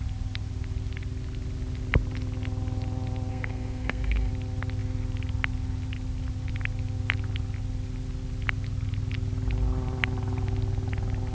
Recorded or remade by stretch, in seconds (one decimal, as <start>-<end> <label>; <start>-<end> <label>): 0.0-3.3 recorded; 3.3-4.3 remade; 4.3-11.3 recorded